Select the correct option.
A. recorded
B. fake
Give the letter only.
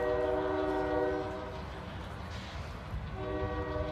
A